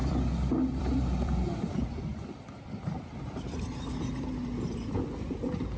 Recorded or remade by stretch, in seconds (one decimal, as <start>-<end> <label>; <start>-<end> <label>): 0.0-1.7 remade; 1.7-2.1 recorded; 2.1-3.9 remade; 3.9-5.8 recorded